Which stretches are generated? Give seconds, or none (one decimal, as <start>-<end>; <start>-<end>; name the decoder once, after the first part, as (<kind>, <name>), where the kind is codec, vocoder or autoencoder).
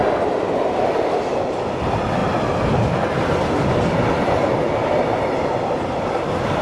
none